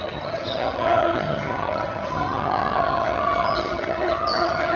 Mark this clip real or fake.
fake